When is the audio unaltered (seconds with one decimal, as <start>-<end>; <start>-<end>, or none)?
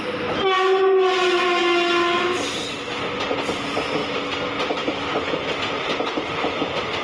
0.0-7.0